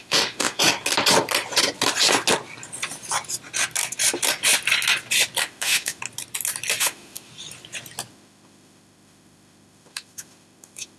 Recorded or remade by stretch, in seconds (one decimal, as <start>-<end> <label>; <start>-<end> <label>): 0.0-0.6 remade; 0.6-5.4 recorded; 5.4-6.0 remade; 6.0-6.8 recorded; 6.8-7.3 remade; 7.3-8.1 recorded; 8.1-11.0 remade